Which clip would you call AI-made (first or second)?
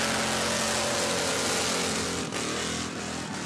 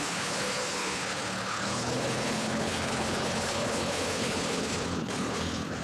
second